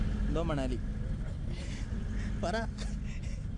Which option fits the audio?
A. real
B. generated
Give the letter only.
A